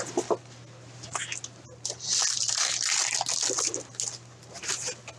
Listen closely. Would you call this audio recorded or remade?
recorded